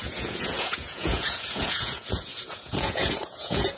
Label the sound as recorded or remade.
remade